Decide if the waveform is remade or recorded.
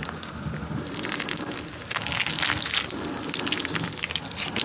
recorded